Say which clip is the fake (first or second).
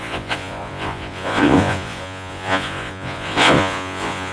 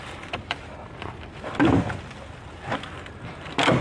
first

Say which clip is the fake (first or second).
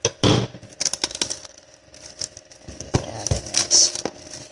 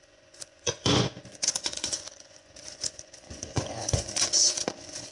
second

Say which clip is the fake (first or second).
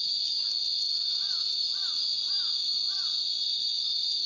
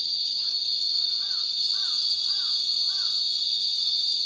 second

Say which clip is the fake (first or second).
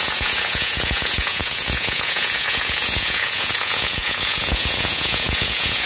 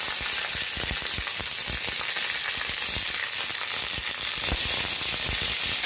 first